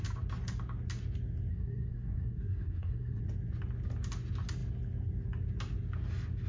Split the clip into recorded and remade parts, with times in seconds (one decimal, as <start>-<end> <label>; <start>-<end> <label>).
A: 0.0-1.5 recorded; 1.5-3.2 remade; 3.2-6.5 recorded

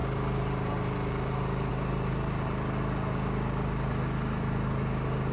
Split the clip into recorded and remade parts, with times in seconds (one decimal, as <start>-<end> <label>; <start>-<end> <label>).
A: 0.0-5.3 recorded

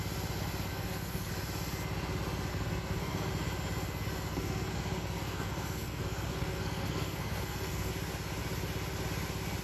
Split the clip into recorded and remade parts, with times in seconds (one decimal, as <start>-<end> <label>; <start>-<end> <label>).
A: 0.0-0.7 recorded; 0.7-1.3 remade; 1.3-2.5 recorded; 2.5-3.3 remade; 3.3-4.3 recorded; 4.3-7.9 remade; 7.9-9.6 recorded

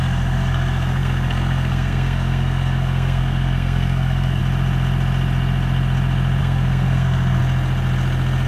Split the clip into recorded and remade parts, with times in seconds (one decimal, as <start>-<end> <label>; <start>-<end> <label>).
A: 0.0-4.4 remade; 4.4-6.4 recorded; 6.4-7.4 remade; 7.4-8.5 recorded